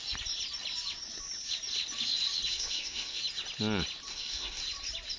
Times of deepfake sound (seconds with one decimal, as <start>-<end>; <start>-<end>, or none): 2.5-3.2; 4.1-4.6